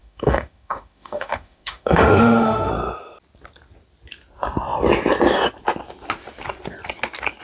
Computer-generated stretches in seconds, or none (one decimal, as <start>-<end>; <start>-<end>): 0.0-2.7